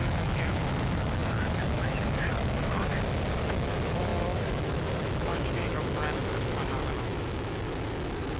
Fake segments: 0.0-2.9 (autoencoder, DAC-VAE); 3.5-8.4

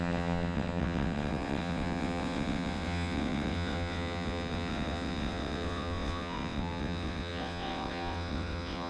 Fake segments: 0.0-8.9 (vocoder, WaveNeXt)